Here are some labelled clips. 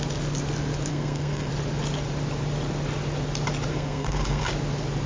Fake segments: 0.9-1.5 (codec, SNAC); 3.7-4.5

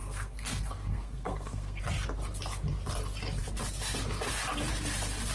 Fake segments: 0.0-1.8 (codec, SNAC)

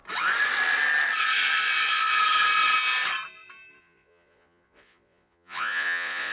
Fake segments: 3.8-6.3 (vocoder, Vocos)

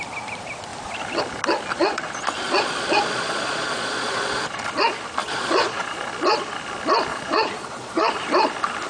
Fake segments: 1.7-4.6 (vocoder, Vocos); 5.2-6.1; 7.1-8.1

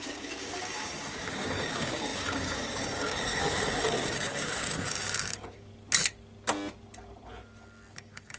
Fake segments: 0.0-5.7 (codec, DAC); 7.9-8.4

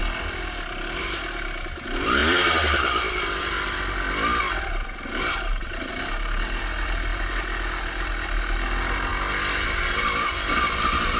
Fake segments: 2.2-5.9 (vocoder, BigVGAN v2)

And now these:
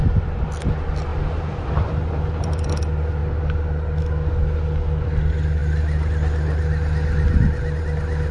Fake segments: 1.1-2.7 (vocoder, BigVGAN v2)

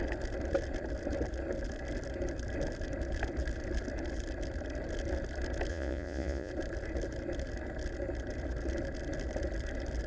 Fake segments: 5.7-6.5 (vocoder, Vocos)